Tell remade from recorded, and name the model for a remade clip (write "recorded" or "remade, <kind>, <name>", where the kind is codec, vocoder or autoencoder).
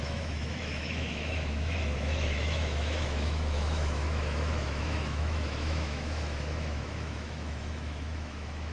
remade, autoencoder, DAC-VAE